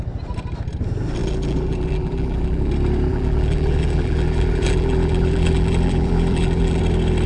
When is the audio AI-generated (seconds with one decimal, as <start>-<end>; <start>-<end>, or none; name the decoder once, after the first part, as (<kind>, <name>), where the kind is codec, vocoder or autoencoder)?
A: 1.2-2.7 (vocoder, BigVGAN v2); 3.1-6.8